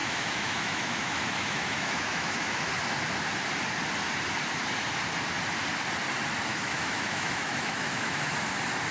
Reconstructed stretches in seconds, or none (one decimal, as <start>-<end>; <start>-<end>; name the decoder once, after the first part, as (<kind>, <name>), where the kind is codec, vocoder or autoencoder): 0.0-2.7 (autoencoder, DAC-VAE); 6.5-8.3